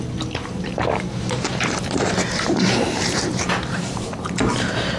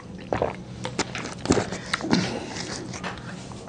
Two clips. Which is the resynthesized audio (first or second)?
first